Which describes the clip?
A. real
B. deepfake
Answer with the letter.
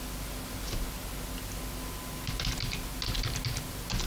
A